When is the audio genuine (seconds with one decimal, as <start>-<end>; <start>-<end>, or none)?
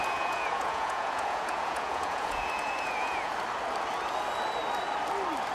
3.3-5.5